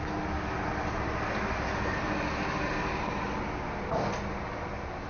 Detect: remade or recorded recorded